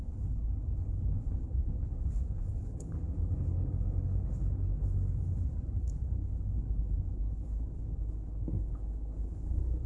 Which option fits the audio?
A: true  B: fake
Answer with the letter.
B